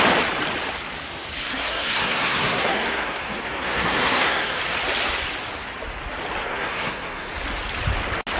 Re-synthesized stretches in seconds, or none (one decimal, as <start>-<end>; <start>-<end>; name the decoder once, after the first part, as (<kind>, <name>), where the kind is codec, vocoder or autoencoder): 1.4-4.6 (codec, SNAC); 6.4-7.3